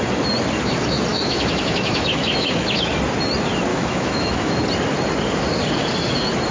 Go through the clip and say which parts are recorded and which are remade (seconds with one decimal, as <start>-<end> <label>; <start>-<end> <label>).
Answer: 0.0-1.1 recorded; 1.1-2.9 remade; 2.9-3.7 recorded; 3.7-4.6 remade; 4.6-6.5 recorded